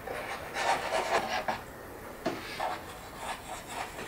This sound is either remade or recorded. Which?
recorded